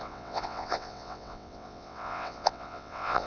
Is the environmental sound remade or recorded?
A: remade